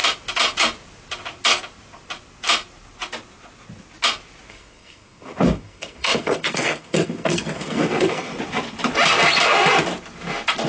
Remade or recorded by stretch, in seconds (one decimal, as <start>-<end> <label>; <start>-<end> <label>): 0.0-4.5 recorded; 4.5-8.3 remade; 8.3-10.7 recorded